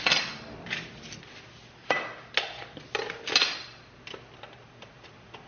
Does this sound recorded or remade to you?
recorded